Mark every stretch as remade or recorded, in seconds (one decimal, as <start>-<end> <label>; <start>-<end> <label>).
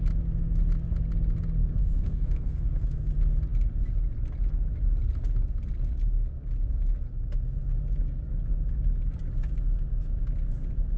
0.0-1.6 recorded; 1.6-3.0 remade; 3.0-11.0 recorded